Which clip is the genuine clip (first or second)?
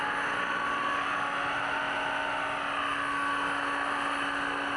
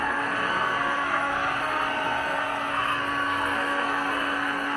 first